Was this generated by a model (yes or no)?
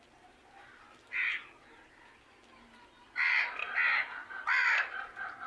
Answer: yes